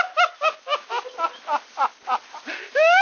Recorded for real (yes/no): yes